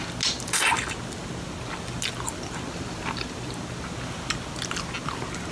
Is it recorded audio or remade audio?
recorded